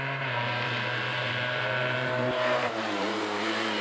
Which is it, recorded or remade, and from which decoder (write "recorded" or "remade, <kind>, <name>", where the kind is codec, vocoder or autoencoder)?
remade, vocoder, BigVGAN v2